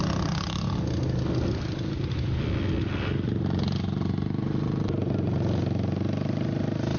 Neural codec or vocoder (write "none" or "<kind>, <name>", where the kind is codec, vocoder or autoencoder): none